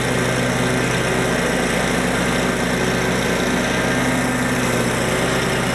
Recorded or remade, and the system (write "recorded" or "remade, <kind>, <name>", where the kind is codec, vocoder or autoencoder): recorded